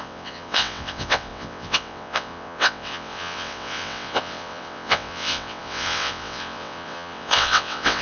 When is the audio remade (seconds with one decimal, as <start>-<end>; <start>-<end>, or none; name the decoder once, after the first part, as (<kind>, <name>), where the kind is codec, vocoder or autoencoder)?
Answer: 0.0-8.0 (vocoder, WaveNeXt)